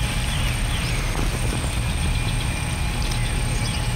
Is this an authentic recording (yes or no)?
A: yes